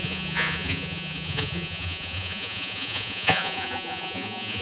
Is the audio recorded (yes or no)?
no